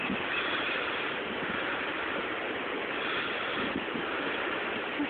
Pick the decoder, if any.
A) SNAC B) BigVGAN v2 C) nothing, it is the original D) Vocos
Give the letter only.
B